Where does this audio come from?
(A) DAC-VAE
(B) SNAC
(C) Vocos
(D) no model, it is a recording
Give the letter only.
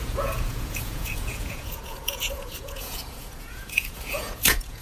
C